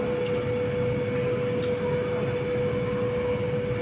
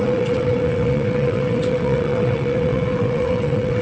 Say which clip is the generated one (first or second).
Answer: second